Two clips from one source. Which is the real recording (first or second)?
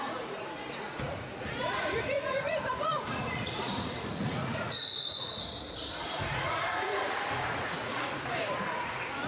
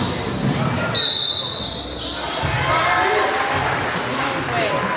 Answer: second